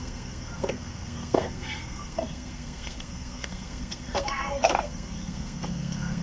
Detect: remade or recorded remade